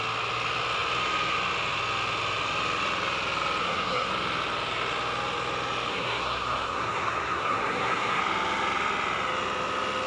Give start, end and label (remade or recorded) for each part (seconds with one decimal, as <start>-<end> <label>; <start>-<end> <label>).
0.0-3.6 recorded; 3.6-4.1 remade; 4.1-5.9 recorded; 5.9-8.2 remade; 8.2-10.1 recorded